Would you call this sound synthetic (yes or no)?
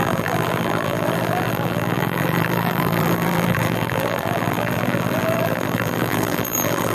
yes